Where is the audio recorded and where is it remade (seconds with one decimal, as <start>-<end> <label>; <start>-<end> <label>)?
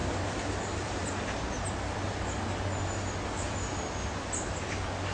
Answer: 0.0-5.1 recorded